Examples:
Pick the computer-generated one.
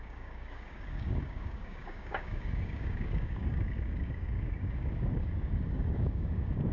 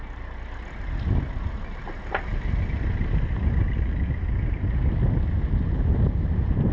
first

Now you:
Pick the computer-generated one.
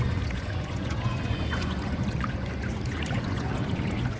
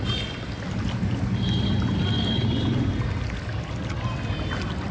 first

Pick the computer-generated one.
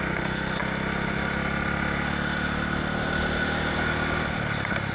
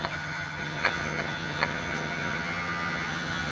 second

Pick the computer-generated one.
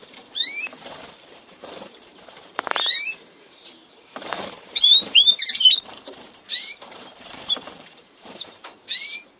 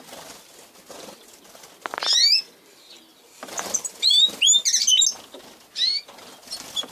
first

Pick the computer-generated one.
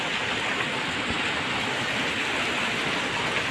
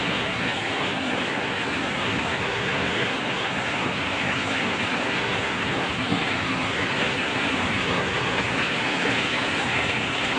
second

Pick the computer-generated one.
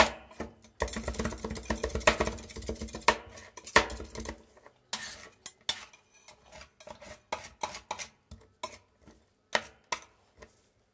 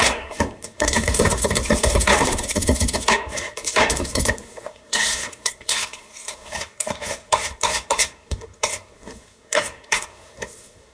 second